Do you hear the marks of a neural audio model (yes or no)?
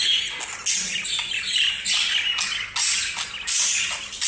no